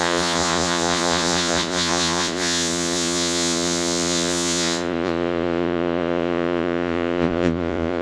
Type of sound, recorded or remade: remade